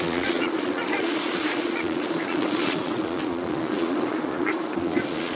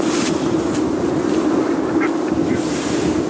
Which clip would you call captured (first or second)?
second